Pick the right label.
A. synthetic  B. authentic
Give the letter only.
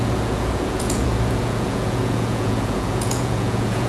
A